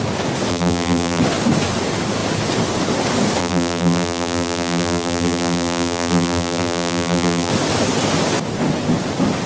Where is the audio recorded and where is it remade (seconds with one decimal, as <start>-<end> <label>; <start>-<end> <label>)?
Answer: 0.0-0.5 recorded; 0.5-1.2 remade; 1.2-3.4 recorded; 3.4-7.5 remade; 7.5-9.5 recorded